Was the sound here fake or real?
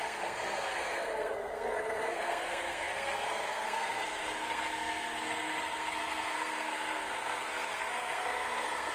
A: fake